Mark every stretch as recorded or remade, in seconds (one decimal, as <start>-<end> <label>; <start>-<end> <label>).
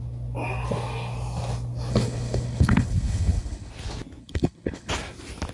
0.0-1.9 recorded; 1.9-3.7 remade; 3.7-4.2 recorded; 4.2-4.9 remade; 4.9-5.5 recorded